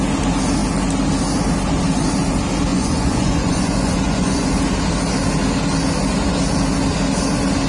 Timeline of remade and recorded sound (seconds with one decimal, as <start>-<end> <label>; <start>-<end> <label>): 0.0-2.7 recorded; 2.7-4.5 remade; 4.5-7.7 recorded